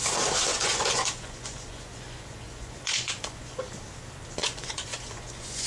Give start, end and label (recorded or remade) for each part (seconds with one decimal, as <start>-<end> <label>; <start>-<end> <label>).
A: 0.0-0.5 recorded; 0.5-3.6 remade; 3.6-4.4 recorded; 4.4-5.7 remade